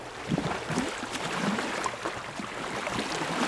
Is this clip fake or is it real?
fake